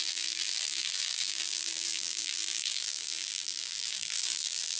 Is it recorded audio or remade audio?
remade